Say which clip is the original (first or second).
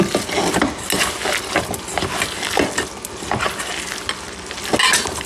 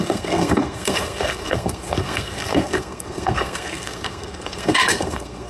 first